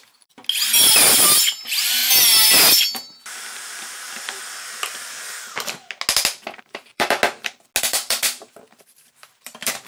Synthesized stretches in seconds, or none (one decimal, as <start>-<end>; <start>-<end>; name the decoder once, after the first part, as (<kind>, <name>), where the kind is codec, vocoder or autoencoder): 0.0-0.4 (vocoder, BigVGAN v2); 1.4-2.0; 6.6-7.2; 7.8-9.9